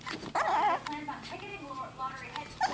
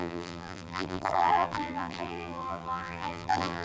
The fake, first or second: second